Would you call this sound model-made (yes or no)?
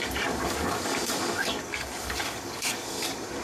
yes